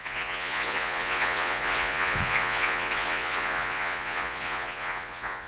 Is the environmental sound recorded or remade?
remade